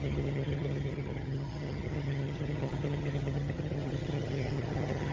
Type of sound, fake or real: fake